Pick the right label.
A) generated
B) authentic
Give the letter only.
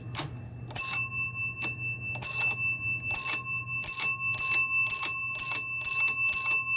B